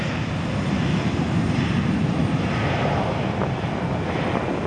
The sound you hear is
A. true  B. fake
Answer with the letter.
A